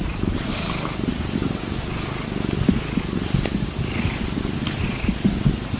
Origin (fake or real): real